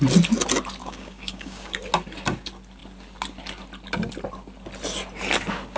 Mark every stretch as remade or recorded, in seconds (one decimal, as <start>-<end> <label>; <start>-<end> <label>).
0.0-0.8 recorded; 0.8-1.8 remade; 1.8-5.8 recorded